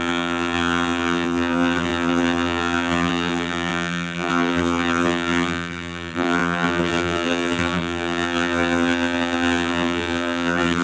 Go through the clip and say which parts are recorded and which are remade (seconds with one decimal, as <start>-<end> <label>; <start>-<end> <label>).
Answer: 0.0-10.8 remade